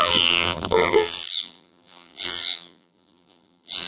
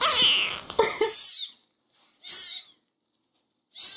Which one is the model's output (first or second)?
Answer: first